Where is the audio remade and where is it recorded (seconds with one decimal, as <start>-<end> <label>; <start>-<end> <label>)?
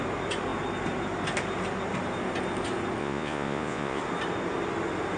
0.0-3.0 recorded; 3.0-4.0 remade; 4.0-5.2 recorded